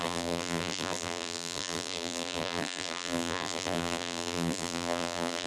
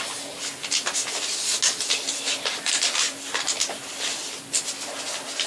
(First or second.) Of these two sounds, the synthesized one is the first